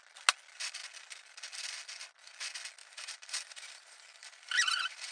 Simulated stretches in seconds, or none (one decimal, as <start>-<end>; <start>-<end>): 2.8-5.1